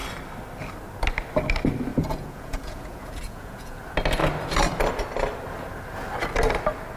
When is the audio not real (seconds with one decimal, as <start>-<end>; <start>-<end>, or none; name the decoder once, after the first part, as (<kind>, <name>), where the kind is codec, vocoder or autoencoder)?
1.9-3.8 (vocoder, Vocos)